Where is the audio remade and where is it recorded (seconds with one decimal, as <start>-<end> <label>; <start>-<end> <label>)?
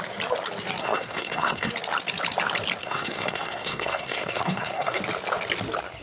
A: 0.0-0.8 recorded; 0.8-1.7 remade; 1.7-2.8 recorded; 2.8-5.0 remade; 5.0-6.0 recorded